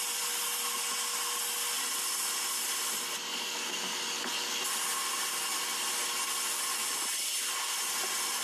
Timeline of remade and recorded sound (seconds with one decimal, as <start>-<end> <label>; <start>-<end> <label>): 0.0-3.3 recorded; 3.3-4.6 remade; 4.6-8.4 recorded